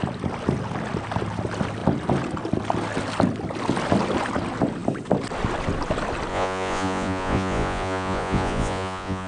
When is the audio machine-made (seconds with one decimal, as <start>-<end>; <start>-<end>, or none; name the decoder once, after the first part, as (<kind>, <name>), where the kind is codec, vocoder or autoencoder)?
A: 6.3-9.3 (vocoder, Vocos)